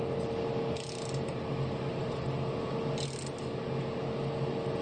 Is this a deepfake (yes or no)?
no